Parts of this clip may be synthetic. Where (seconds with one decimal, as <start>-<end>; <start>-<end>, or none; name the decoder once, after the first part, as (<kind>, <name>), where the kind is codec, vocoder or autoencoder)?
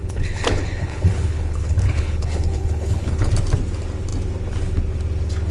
0.0-3.3 (codec, HILCodec)